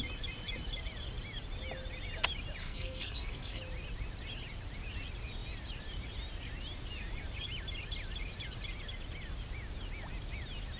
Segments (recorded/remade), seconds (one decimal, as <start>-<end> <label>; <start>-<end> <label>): 0.0-2.6 recorded; 2.6-3.6 remade; 3.6-10.8 recorded